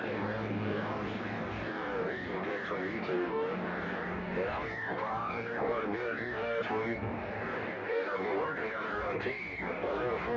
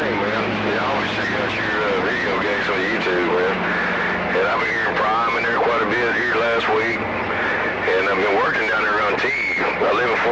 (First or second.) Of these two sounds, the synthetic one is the first